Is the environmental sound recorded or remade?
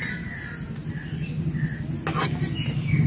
recorded